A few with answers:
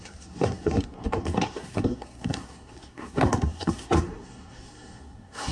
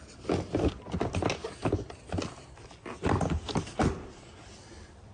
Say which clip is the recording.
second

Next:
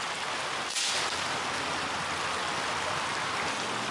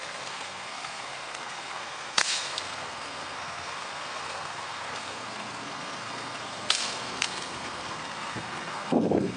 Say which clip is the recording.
first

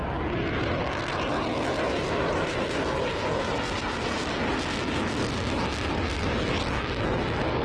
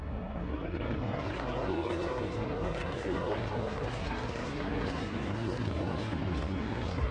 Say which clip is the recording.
first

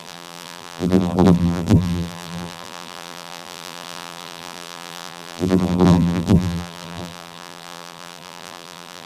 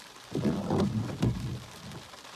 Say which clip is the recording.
second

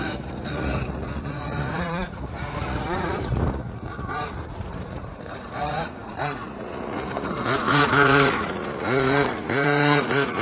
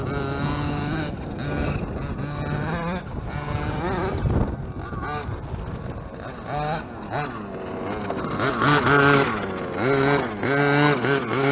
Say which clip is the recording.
second